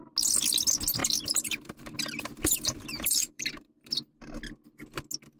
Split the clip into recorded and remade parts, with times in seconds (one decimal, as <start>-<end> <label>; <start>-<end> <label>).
0.0-1.0 recorded; 1.0-4.2 remade; 4.2-5.4 recorded